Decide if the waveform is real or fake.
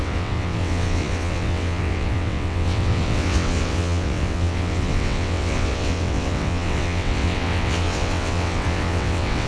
fake